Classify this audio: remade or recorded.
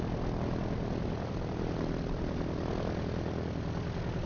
recorded